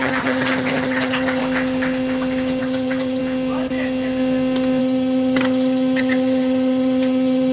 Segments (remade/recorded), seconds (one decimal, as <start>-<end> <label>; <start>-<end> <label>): 0.0-1.4 remade; 1.4-2.6 recorded; 2.6-3.2 remade; 3.2-4.8 recorded; 4.8-7.5 remade